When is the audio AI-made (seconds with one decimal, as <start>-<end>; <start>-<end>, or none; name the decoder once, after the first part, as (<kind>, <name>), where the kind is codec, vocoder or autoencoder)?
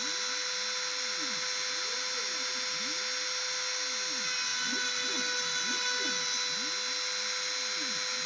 none